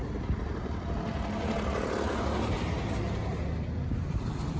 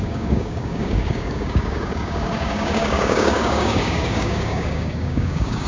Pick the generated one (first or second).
second